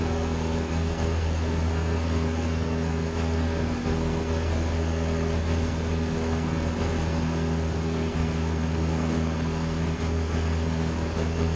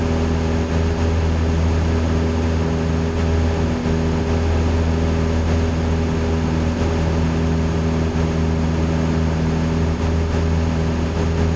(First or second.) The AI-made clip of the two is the first